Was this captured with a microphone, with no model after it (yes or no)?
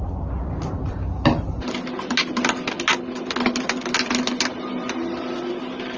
yes